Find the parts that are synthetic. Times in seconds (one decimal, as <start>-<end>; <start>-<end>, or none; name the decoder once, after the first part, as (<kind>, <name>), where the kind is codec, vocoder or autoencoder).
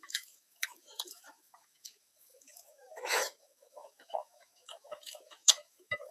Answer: 0.0-6.1 (autoencoder, DAC-VAE)